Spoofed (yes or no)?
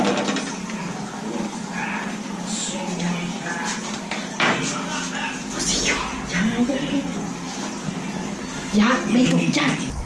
no